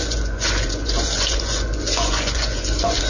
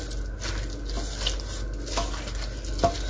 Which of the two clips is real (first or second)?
second